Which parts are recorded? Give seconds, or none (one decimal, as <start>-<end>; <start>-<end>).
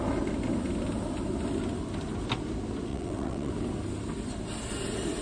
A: 0.0-2.9; 3.5-5.2